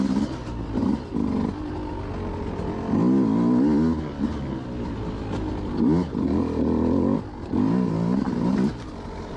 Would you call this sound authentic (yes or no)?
yes